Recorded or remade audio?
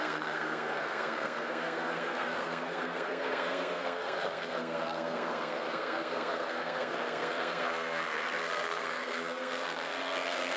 remade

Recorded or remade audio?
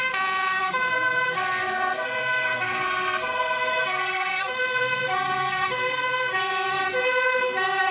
remade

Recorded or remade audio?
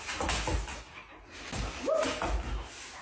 recorded